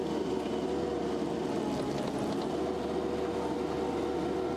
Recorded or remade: recorded